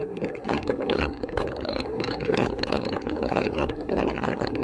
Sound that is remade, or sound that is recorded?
remade